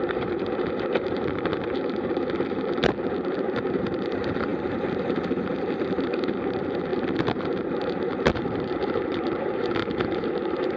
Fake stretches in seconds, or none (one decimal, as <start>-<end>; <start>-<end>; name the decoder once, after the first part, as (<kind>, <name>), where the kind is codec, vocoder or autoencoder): 0.0-10.8 (vocoder, BigVGAN v2)